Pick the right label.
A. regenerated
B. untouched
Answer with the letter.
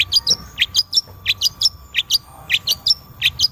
B